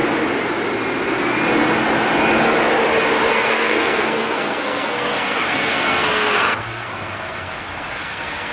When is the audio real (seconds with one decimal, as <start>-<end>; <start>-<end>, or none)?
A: 0.0-3.3